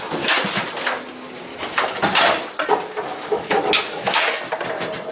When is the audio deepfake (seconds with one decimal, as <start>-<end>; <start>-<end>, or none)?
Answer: 1.5-2.0; 3.1-4.4

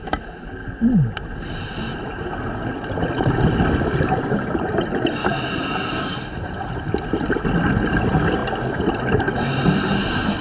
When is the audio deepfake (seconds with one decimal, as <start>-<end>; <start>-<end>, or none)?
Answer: none

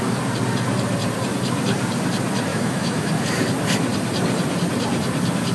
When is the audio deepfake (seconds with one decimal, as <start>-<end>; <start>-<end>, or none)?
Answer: 2.5-3.1